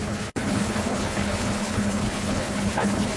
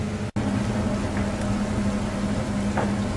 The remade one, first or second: first